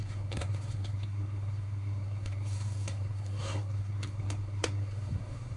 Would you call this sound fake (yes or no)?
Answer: yes